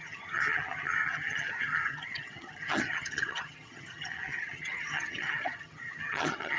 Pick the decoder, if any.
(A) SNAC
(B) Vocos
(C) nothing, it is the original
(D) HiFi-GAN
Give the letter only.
D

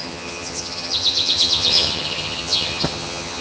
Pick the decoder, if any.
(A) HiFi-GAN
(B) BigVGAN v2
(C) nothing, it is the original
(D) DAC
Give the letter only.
A